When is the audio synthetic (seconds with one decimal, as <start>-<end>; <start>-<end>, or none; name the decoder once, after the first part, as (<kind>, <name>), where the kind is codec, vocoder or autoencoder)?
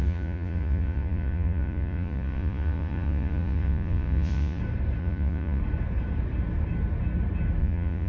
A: 0.0-4.6 (vocoder, Vocos); 5.0-5.6; 7.6-8.1